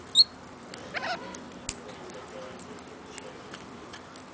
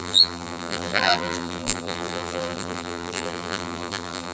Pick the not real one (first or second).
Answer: second